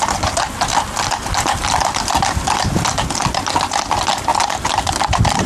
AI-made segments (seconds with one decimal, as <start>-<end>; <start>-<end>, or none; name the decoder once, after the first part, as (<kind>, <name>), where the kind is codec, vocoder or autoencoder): none